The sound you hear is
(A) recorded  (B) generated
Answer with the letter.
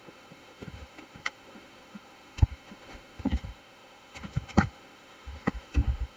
B